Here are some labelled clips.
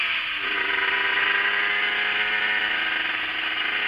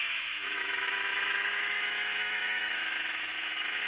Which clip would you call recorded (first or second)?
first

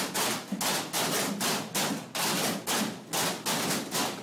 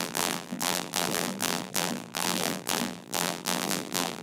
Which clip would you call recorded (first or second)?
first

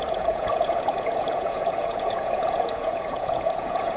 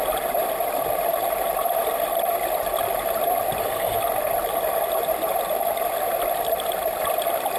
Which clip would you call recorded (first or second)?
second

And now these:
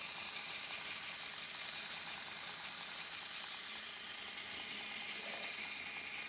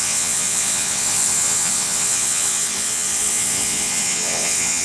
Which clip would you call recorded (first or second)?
first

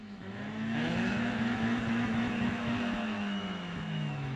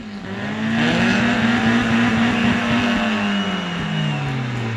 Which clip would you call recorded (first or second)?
second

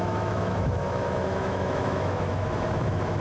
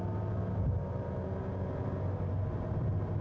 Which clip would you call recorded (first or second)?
second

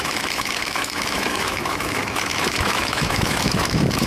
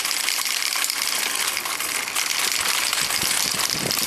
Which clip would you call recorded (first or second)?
second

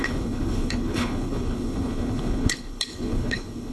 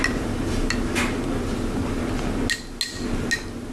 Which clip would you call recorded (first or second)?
second